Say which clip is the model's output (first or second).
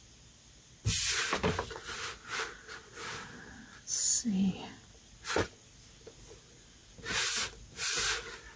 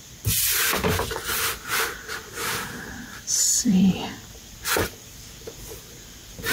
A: second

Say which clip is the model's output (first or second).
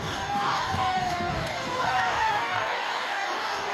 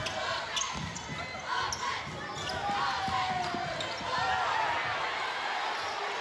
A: first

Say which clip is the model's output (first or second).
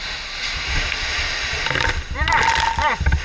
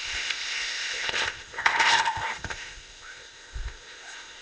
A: second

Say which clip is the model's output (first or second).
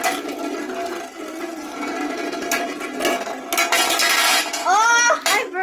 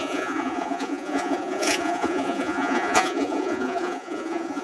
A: second